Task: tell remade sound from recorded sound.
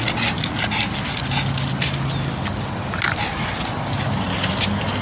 recorded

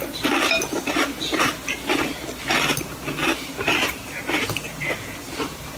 remade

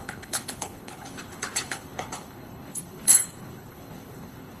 remade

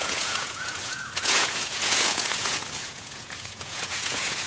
remade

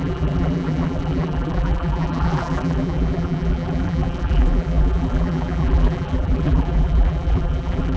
remade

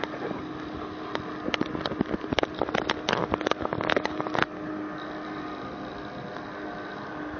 recorded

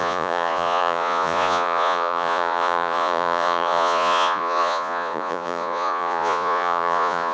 remade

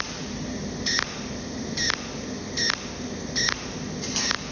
recorded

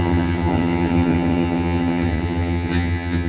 remade